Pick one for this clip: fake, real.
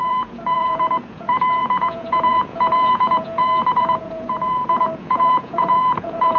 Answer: fake